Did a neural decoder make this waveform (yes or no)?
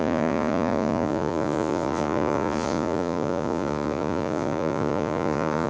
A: yes